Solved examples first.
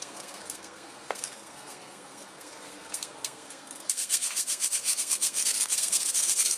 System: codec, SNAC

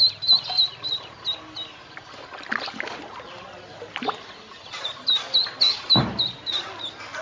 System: none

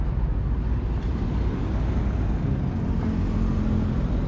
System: none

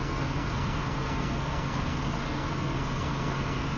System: codec, SNAC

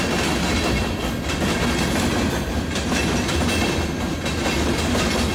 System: none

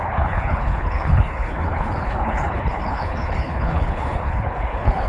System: codec, HILCodec